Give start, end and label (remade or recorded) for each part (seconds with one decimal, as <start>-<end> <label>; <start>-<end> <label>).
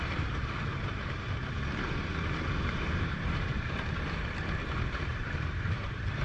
0.0-6.2 remade